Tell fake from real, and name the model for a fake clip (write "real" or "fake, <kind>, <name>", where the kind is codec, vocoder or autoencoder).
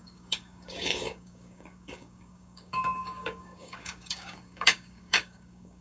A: fake, codec, DAC